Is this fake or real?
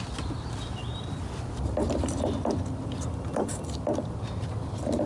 fake